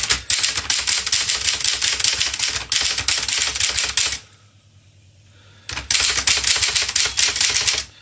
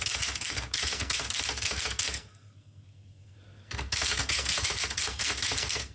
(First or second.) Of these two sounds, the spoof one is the second